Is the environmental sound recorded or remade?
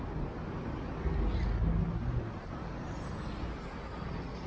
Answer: recorded